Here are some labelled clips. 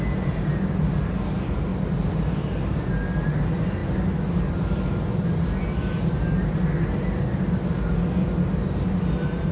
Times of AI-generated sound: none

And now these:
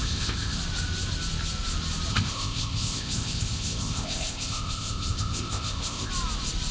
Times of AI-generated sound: 0.0-0.6 (codec, ZipCodec); 2.1-6.1

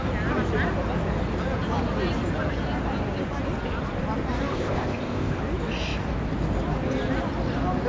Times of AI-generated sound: 4.5-5.4 (codec, ZipCodec)

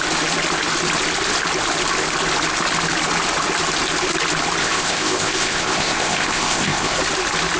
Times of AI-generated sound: 4.6-7.0 (codec, ZipCodec)

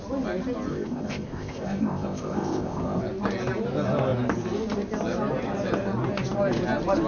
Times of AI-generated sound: 0.7-3.0 (codec, ZipCodec)